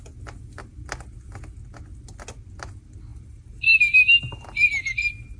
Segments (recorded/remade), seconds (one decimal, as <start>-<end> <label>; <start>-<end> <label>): 0.0-3.1 recorded; 3.1-4.2 remade; 4.2-5.4 recorded